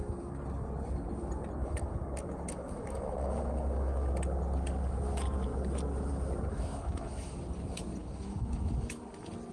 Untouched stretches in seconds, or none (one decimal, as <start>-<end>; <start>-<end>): 0.0-1.6; 4.1-6.5; 7.4-8.0; 9.0-9.5